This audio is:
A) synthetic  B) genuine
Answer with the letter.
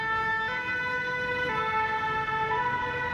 B